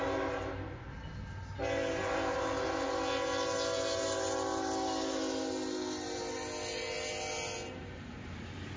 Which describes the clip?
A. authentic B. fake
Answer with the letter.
A